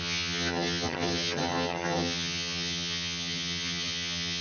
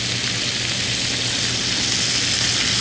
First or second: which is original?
second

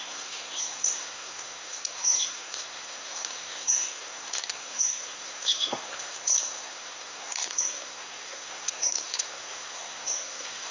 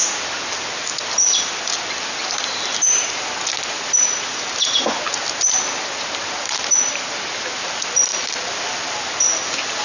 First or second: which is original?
second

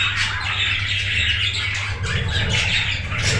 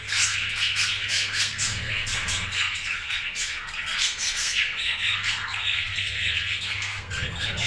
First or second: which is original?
first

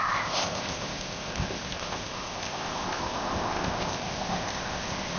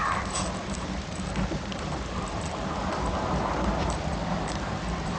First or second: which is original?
second